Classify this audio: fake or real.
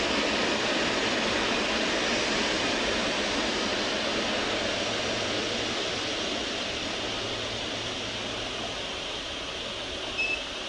real